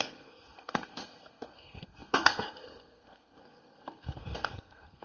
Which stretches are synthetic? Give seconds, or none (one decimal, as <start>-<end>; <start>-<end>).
0.0-5.0